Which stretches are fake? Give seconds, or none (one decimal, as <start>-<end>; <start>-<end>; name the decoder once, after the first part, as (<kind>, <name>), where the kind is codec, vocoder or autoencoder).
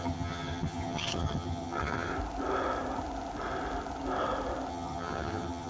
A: 0.0-2.1 (vocoder, HiFi-GAN); 4.7-5.7